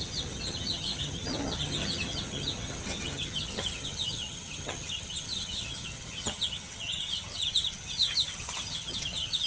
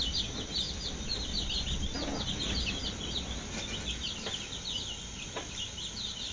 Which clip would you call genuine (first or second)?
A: second